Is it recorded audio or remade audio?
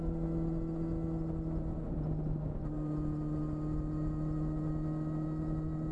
recorded